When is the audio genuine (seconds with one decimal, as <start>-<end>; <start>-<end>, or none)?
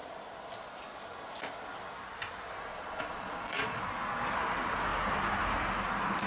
0.0-2.7; 3.8-6.3